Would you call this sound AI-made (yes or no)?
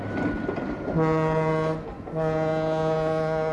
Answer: no